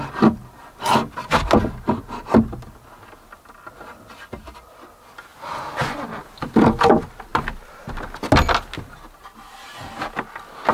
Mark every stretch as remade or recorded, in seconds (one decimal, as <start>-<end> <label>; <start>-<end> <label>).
0.0-10.7 recorded